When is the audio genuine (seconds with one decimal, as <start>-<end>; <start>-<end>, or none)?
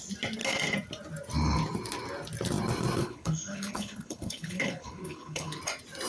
0.0-3.0; 5.6-6.1